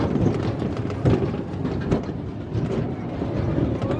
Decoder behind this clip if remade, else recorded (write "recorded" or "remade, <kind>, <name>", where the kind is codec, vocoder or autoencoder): remade, vocoder, BigVGAN v2